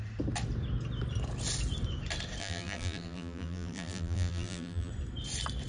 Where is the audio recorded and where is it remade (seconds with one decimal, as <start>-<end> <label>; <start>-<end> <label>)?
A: 0.0-2.4 recorded; 2.4-4.9 remade; 4.9-5.7 recorded